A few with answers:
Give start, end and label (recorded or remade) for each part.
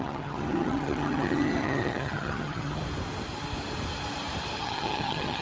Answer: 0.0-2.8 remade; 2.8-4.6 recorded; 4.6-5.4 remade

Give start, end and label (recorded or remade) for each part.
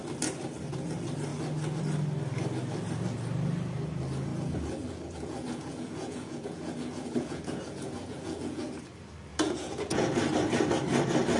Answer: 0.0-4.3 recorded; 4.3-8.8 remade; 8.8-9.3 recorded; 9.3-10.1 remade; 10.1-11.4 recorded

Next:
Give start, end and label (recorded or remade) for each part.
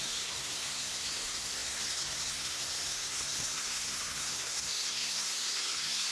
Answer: 0.0-6.1 remade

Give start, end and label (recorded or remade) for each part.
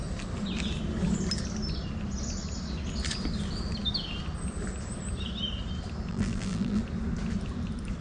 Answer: 0.0-6.1 recorded; 6.1-6.8 remade; 6.8-8.0 recorded